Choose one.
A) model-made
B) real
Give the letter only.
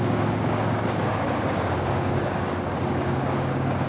A